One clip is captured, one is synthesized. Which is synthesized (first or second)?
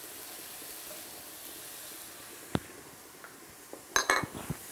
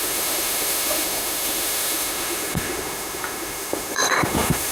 second